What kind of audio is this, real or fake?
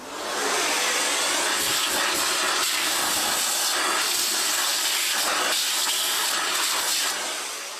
real